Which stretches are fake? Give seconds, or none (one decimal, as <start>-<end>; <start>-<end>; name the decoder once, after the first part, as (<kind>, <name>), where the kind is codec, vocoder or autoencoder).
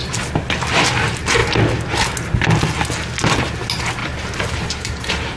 4.0-5.4 (vocoder, BigVGAN v2)